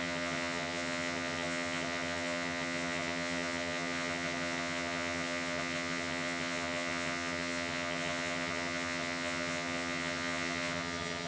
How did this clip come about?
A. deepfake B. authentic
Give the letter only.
A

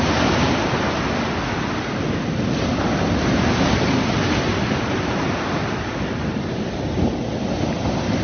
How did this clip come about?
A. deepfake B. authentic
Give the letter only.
B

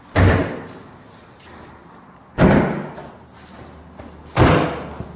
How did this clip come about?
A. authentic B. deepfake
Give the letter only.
A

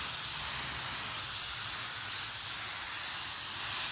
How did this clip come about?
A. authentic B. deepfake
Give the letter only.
A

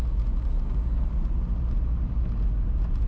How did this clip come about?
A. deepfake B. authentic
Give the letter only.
B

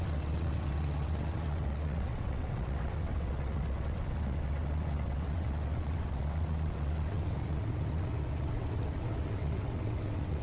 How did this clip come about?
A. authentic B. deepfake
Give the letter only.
B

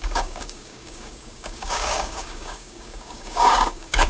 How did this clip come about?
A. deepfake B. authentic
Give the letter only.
A